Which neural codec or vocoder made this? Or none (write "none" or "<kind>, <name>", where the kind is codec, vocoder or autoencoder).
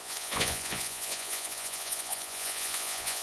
vocoder, Vocos